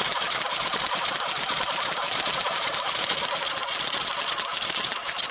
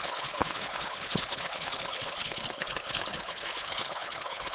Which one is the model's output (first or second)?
second